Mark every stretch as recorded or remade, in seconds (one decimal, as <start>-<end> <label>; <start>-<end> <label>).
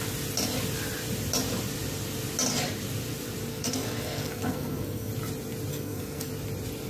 0.0-3.5 recorded; 3.5-5.1 remade; 5.1-5.7 recorded; 5.7-6.3 remade; 6.3-6.9 recorded